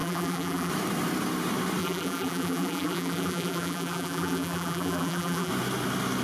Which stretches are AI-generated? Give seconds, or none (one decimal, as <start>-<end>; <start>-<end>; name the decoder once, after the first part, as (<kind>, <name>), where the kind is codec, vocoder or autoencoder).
0.0-0.7 (vocoder, BigVGAN v2); 1.8-5.5

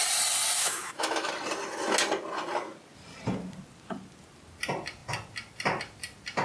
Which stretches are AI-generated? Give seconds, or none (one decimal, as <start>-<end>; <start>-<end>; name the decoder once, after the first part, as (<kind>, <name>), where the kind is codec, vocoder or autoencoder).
0.6-1.3 (autoencoder, DAC-VAE)

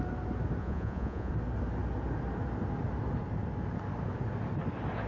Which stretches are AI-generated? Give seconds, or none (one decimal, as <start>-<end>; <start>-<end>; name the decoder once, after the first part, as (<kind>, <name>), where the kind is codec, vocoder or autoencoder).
0.6-1.3 (vocoder, Vocos)

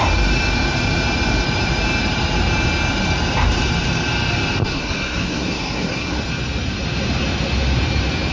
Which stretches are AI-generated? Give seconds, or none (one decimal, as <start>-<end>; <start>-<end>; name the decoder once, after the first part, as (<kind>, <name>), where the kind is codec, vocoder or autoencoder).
4.6-6.2 (codec, SNAC)